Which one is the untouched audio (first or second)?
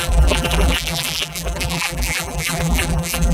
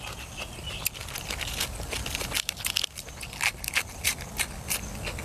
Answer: second